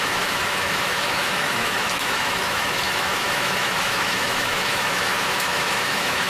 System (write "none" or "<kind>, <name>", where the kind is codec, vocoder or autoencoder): autoencoder, DAC-VAE